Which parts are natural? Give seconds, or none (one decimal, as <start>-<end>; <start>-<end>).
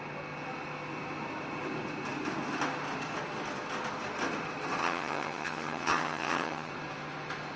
0.0-4.8; 6.7-7.6